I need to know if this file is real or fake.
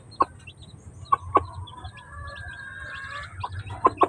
real